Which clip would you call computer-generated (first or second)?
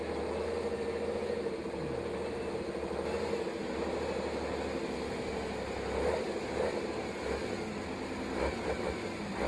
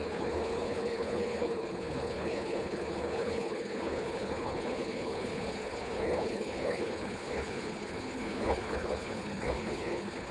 second